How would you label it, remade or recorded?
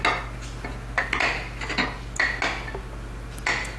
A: recorded